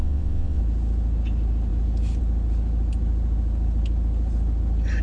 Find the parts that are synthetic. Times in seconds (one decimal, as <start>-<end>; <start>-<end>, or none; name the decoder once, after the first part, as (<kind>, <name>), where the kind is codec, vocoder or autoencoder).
0.0-0.6 (vocoder, WaveNeXt)